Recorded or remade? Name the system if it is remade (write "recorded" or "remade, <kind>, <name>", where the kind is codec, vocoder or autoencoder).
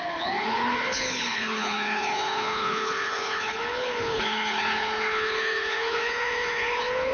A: remade, codec, HILCodec